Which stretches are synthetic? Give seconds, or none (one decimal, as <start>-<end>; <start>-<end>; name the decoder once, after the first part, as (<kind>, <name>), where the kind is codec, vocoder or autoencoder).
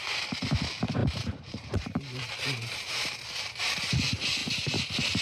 1.0-3.8 (vocoder, BigVGAN v2)